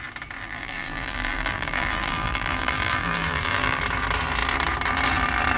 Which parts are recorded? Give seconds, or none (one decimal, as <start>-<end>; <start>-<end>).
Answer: 0.0-0.4; 3.8-5.6

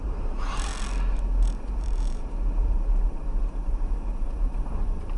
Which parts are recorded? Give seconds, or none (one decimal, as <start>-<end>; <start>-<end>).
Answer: 0.7-1.7

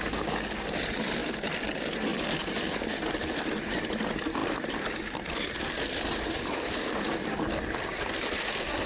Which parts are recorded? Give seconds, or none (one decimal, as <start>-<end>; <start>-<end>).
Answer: 0.0-4.4; 6.7-8.9

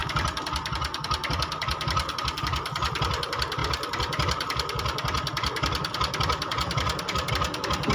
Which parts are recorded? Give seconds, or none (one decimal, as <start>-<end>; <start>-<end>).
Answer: 0.0-7.9

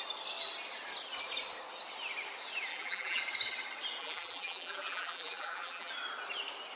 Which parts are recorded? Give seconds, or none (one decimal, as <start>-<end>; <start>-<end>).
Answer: 0.0-2.7; 3.2-4.0; 5.9-6.8

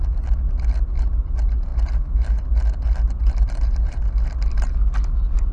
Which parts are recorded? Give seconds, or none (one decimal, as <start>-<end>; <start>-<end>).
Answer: 0.0-3.2; 4.0-5.5